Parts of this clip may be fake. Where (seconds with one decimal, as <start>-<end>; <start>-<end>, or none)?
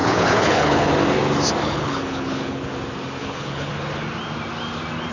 0.0-0.9; 1.6-2.7; 3.2-3.7